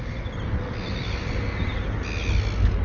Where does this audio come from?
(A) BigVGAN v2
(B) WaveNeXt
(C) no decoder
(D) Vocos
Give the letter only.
C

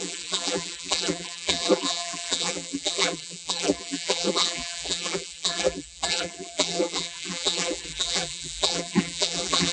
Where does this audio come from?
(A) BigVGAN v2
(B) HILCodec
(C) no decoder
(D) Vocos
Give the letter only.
A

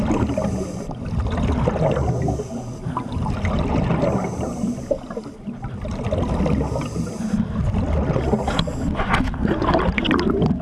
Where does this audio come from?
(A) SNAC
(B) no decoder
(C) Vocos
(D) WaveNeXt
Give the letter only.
B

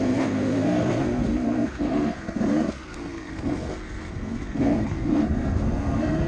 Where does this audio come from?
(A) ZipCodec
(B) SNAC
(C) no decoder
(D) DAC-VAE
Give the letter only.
B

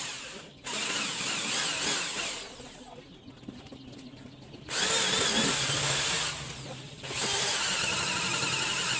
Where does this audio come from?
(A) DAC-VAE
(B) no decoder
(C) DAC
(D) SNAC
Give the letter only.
B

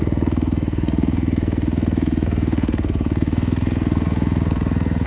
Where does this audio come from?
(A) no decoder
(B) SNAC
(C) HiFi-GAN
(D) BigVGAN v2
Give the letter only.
B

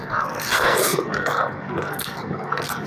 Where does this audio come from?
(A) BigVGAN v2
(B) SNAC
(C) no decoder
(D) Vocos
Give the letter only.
B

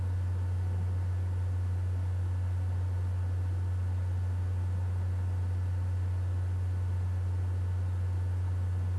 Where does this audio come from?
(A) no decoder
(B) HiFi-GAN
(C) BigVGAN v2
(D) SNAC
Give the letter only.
A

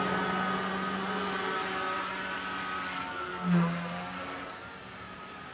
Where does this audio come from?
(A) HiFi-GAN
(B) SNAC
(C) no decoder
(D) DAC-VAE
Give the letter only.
C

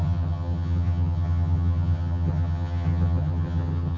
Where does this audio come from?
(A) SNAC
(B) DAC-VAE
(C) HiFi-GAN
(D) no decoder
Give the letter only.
C